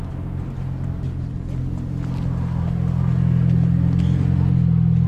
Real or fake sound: real